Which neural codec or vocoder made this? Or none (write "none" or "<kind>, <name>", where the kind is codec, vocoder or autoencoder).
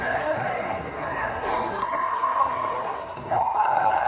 codec, SNAC